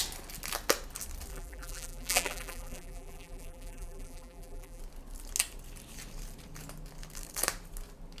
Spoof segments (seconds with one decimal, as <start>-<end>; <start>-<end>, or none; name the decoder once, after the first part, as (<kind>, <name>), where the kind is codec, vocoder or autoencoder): 1.3-4.8 (vocoder, BigVGAN v2)